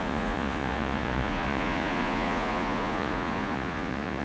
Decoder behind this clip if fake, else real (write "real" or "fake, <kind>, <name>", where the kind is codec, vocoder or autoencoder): fake, vocoder, Vocos